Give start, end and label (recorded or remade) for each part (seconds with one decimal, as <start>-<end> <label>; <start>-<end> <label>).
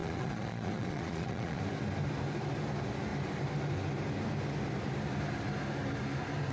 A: 0.0-1.6 remade; 1.6-6.5 recorded